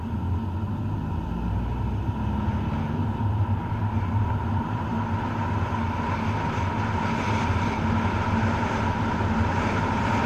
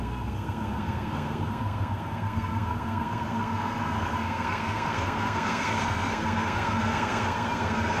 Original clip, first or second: first